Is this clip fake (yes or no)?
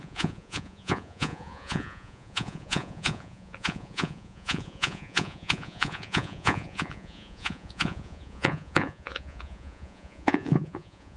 yes